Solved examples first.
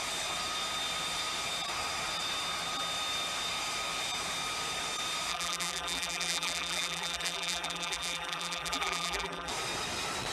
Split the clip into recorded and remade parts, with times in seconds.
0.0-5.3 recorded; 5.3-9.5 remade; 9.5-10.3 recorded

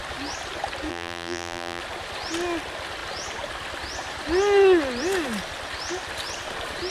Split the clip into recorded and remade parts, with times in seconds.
0.0-0.9 recorded; 0.9-1.8 remade; 1.8-6.9 recorded

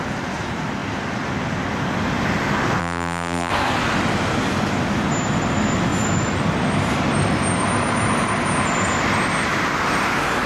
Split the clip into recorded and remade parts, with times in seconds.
0.0-2.8 recorded; 2.8-3.5 remade; 3.5-10.5 recorded